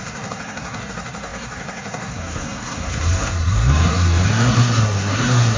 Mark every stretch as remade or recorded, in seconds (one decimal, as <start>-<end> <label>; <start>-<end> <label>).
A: 0.0-5.6 remade